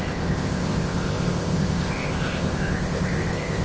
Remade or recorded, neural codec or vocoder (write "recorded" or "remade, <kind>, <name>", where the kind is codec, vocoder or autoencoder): remade, codec, ZipCodec